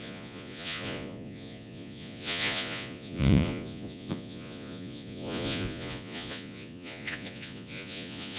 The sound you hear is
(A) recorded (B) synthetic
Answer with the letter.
B